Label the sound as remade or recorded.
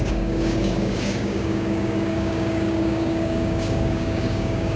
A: remade